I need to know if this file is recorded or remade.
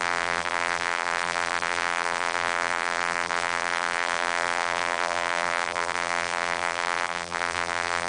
remade